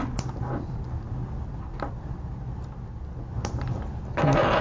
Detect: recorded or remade recorded